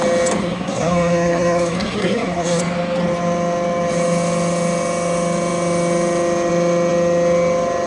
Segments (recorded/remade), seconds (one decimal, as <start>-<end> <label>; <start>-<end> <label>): 0.0-0.4 recorded; 0.4-2.6 remade; 2.6-7.9 recorded